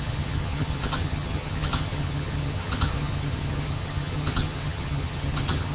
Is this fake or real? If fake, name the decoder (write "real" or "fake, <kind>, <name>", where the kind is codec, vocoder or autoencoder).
fake, vocoder, HiFi-GAN